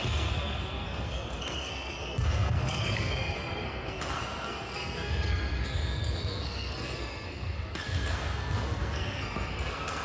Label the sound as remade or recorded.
remade